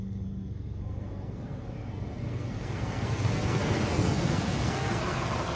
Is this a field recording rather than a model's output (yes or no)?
no